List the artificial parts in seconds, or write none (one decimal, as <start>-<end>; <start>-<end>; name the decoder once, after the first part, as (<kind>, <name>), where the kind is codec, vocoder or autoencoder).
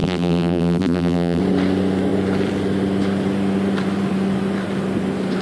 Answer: 0.0-1.4 (vocoder, BigVGAN v2)